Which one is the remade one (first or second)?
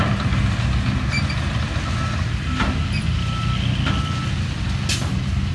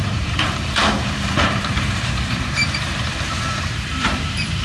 second